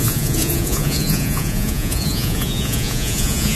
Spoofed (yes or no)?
yes